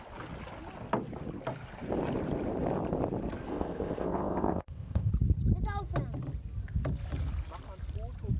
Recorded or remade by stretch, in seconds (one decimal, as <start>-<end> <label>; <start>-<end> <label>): 0.0-3.5 recorded; 3.5-5.1 remade; 5.1-8.4 recorded